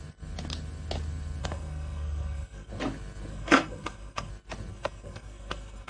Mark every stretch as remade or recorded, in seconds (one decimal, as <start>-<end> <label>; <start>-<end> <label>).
0.0-1.4 recorded; 1.4-2.7 remade; 2.7-3.3 recorded; 3.3-4.3 remade; 4.3-4.7 recorded; 4.7-5.9 remade